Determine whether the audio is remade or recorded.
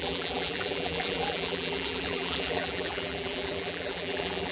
remade